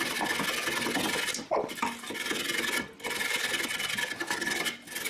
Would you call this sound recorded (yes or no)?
yes